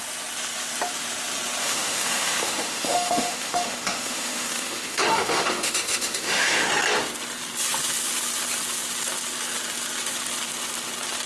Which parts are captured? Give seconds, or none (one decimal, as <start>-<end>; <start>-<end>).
0.0-1.6; 6.7-11.3